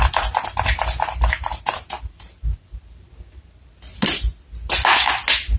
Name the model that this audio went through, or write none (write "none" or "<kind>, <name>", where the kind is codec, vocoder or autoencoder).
none